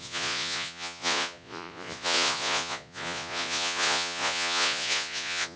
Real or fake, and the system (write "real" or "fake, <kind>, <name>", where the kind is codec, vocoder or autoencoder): fake, vocoder, Vocos